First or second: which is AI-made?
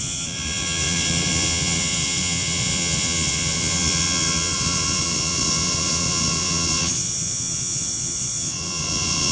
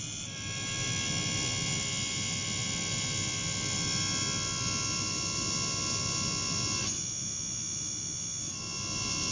first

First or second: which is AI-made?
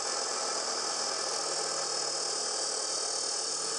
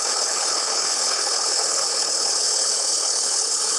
second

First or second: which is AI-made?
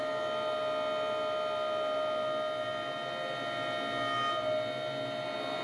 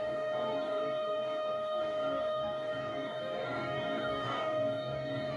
second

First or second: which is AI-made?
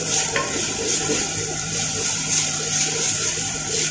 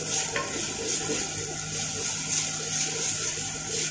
first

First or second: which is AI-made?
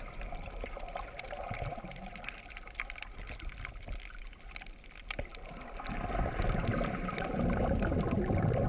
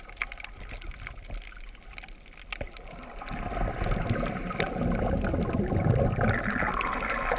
first